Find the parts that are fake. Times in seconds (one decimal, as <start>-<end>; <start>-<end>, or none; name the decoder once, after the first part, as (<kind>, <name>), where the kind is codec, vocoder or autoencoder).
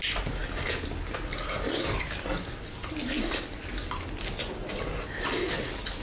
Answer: none